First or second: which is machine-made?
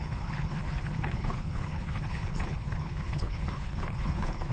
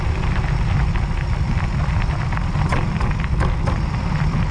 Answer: first